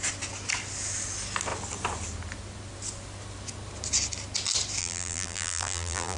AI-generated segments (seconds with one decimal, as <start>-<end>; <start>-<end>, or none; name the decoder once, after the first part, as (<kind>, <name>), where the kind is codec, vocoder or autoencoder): 4.8-6.2 (vocoder, BigVGAN v2)